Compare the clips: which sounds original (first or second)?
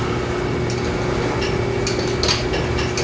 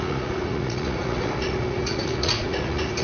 first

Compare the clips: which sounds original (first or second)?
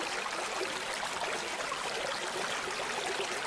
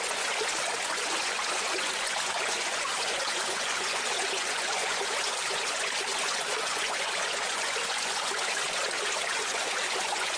first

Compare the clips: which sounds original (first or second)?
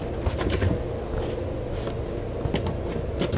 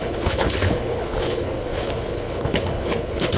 first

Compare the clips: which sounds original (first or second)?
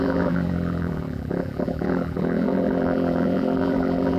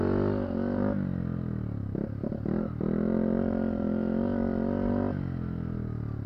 second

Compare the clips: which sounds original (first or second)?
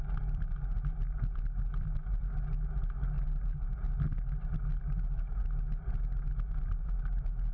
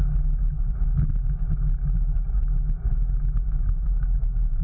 first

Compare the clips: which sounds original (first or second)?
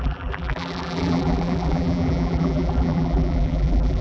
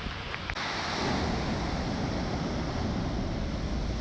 second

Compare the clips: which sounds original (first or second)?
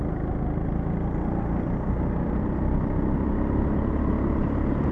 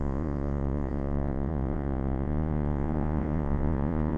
first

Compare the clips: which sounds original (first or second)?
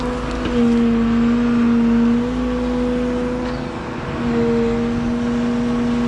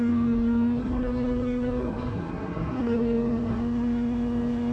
first